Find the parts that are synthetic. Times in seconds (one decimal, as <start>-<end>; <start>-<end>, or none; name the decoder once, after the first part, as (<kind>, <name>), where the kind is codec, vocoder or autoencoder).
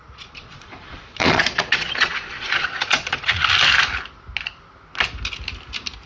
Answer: 0.0-3.4 (vocoder, Vocos)